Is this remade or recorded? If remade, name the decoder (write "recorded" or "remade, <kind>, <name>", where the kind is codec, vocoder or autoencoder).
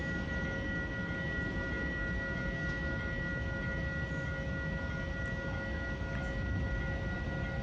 recorded